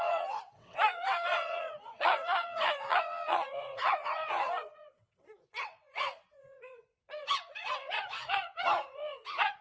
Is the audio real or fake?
fake